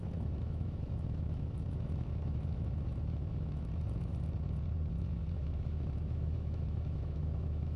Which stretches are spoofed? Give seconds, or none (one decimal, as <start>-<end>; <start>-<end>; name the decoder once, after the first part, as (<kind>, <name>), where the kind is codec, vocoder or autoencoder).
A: 0.0-4.1 (autoencoder, DAC-VAE); 4.9-7.8